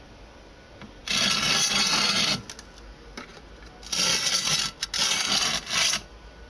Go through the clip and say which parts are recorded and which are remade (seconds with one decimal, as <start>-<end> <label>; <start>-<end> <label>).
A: 0.0-6.5 recorded